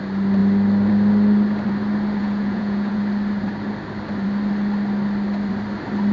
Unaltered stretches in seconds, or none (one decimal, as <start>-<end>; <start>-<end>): 0.0-2.2; 3.0-6.1